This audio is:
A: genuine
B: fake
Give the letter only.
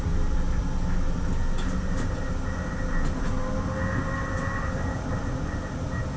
A